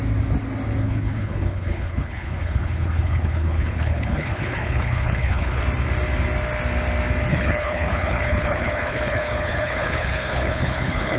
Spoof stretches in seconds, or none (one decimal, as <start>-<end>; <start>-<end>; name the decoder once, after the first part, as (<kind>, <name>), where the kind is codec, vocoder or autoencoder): 0.8-5.6 (codec, HILCodec); 7.3-11.2